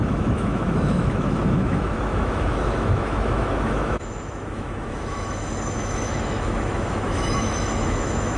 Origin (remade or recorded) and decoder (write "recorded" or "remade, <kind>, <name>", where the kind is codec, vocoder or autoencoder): remade, autoencoder, DAC-VAE